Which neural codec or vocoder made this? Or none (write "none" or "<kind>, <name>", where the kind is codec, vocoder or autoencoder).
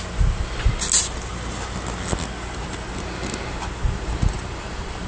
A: none